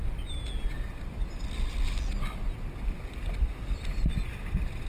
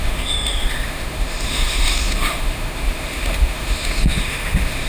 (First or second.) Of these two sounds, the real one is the first